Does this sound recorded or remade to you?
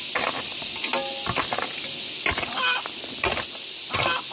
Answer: recorded